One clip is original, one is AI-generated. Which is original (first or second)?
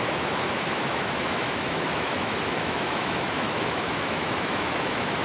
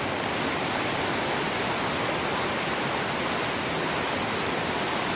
second